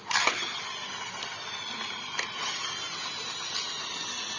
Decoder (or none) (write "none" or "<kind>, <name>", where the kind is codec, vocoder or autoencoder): none